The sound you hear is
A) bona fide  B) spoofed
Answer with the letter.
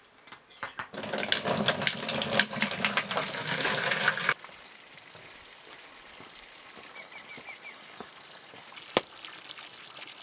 A